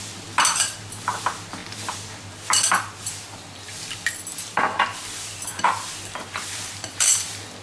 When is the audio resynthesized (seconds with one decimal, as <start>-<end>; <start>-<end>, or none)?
4.9-7.1